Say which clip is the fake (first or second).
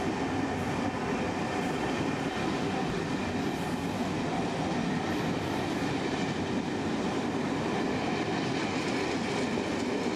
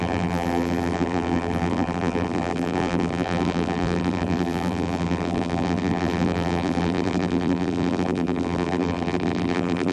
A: second